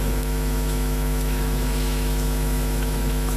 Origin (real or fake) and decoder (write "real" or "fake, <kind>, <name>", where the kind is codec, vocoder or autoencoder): fake, autoencoder, DAC-VAE